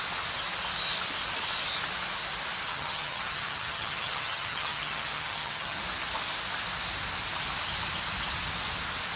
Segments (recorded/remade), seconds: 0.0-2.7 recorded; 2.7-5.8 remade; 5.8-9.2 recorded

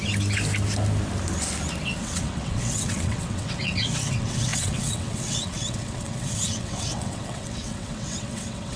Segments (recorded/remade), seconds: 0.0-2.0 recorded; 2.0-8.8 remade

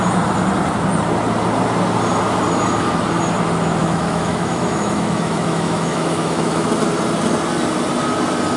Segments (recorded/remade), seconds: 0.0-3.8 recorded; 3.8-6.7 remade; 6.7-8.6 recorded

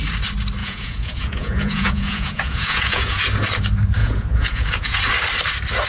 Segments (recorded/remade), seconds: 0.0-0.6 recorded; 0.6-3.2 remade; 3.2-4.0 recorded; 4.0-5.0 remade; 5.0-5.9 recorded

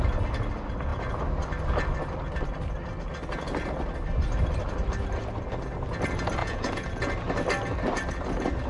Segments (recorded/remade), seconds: 0.0-6.4 recorded; 6.4-7.1 remade; 7.1-8.7 recorded

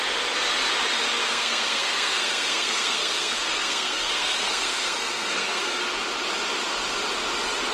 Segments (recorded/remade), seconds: 0.0-1.2 recorded; 1.2-5.8 remade; 5.8-7.7 recorded

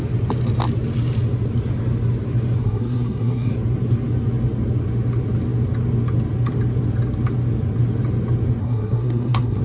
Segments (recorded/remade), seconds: 0.0-2.6 recorded; 2.6-3.5 remade; 3.5-8.6 recorded; 8.6-9.6 remade